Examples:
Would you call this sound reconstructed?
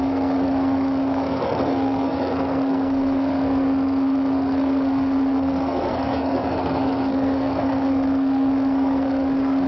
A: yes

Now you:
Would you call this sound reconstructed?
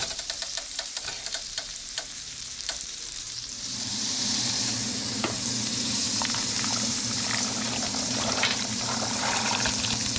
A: yes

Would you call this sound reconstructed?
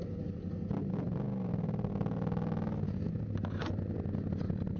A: no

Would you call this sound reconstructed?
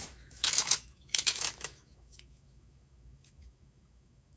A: yes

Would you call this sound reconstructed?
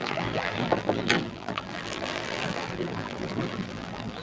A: yes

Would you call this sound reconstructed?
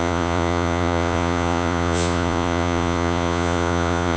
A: yes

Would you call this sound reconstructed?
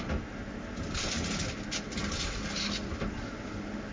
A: no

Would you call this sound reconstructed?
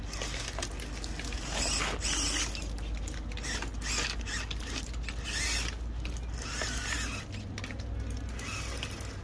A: no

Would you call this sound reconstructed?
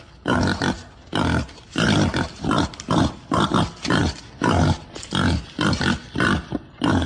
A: no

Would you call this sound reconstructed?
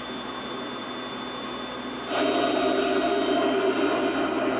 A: no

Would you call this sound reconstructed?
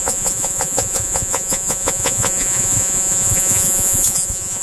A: yes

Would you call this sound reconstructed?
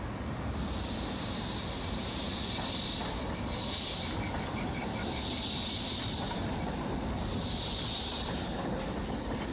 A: no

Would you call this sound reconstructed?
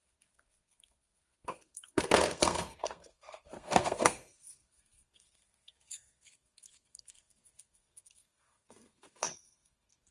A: yes